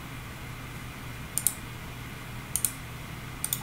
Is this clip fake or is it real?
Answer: real